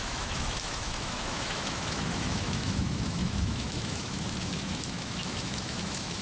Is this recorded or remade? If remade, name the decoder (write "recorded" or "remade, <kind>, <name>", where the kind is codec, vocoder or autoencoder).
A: remade, autoencoder, DAC-VAE